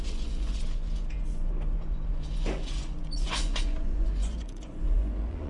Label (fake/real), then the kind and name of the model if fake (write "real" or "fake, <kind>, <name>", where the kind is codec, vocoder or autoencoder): fake, vocoder, Vocos